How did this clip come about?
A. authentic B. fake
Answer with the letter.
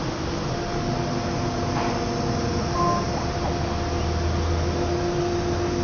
A